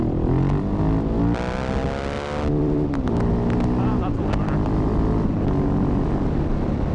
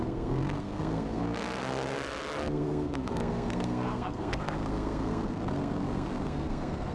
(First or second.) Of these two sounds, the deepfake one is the second